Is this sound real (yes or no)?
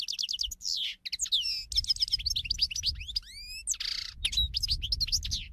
yes